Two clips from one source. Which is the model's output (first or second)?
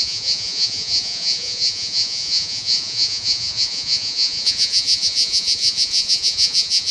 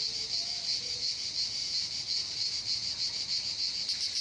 first